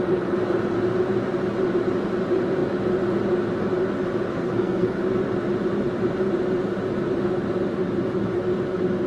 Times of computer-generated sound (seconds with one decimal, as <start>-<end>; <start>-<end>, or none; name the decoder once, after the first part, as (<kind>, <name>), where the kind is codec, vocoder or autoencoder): 4.3-5.0 (codec, SNAC)